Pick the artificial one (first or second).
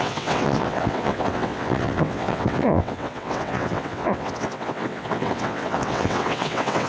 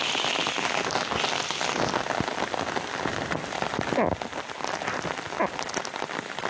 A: first